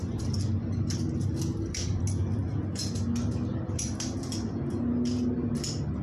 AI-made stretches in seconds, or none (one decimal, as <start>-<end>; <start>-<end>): none